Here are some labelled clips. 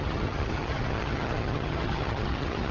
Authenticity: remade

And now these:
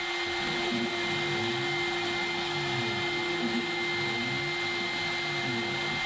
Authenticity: recorded